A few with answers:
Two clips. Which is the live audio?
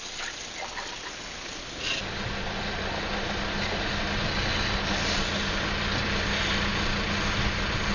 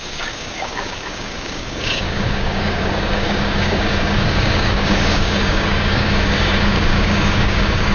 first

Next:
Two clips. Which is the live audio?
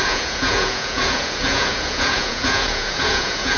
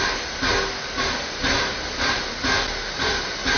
second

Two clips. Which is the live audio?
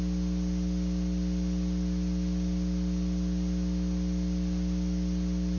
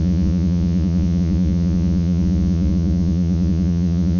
first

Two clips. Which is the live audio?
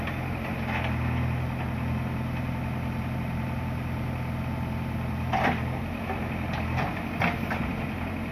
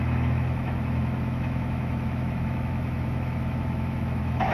first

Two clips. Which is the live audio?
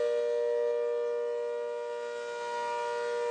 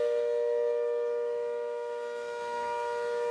first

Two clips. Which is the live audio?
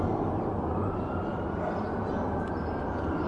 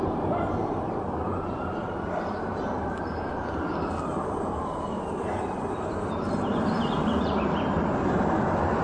first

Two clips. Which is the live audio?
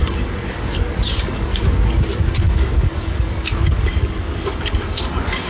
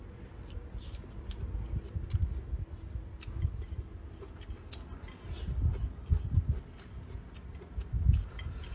second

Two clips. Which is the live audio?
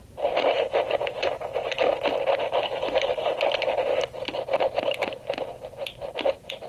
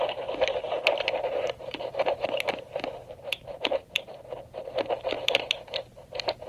first